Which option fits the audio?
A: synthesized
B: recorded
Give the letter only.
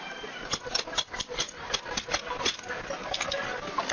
B